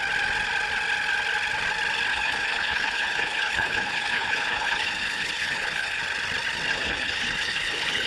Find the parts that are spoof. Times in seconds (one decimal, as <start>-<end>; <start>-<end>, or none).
2.1-6.0; 6.7-8.1